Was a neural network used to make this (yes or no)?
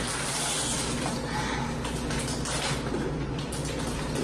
no